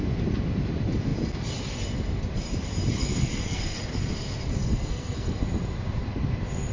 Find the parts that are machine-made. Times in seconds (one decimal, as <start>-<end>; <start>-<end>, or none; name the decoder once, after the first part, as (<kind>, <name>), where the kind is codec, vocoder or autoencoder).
3.0-3.8 (codec, SNAC); 4.6-5.4